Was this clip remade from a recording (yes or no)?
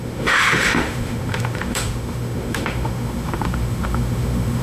yes